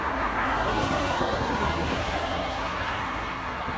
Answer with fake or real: fake